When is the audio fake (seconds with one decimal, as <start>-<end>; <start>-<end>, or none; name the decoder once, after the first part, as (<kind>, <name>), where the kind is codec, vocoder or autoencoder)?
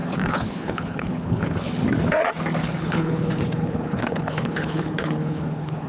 0.0-1.7 (codec, HILCodec); 2.6-5.9